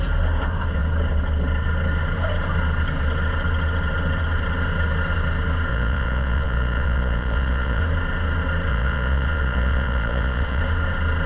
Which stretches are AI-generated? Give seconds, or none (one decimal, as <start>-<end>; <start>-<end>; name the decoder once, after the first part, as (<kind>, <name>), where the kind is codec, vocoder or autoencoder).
5.7-7.8 (vocoder, Vocos); 8.7-10.6